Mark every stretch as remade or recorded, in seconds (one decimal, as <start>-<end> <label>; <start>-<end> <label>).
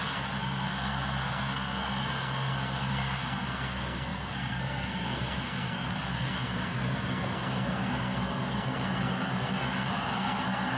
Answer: 0.0-10.8 remade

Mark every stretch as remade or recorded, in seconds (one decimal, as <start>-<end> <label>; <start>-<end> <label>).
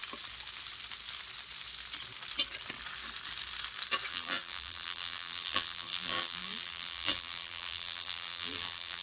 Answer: 0.0-4.1 recorded; 4.1-9.0 remade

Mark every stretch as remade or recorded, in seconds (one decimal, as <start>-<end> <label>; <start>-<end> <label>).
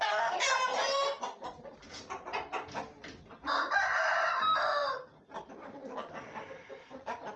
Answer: 0.0-7.4 recorded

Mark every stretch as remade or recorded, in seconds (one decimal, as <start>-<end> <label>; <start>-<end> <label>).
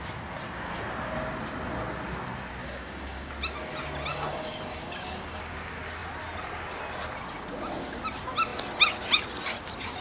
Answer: 0.0-2.6 recorded; 2.6-3.3 remade; 3.3-4.1 recorded; 4.1-5.4 remade; 5.4-10.0 recorded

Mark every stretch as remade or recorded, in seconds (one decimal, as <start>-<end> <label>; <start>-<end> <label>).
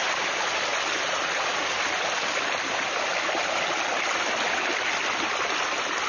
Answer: 0.0-0.7 recorded; 0.7-2.9 remade; 2.9-3.9 recorded; 3.9-4.4 remade; 4.4-6.1 recorded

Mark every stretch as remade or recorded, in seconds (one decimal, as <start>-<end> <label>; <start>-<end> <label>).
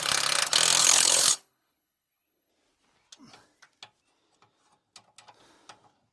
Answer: 0.0-0.8 recorded; 0.8-2.5 remade; 2.5-6.1 recorded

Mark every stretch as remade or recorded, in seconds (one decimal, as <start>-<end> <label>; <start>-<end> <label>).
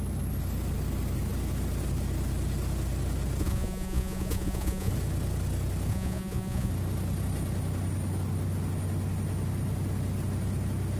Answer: 0.0-3.4 recorded; 3.4-4.9 remade; 4.9-5.9 recorded; 5.9-6.7 remade; 6.7-11.0 recorded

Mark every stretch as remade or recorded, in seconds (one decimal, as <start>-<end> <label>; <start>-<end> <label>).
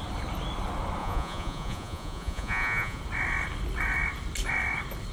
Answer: 0.0-1.0 recorded; 1.0-3.0 remade; 3.0-5.1 recorded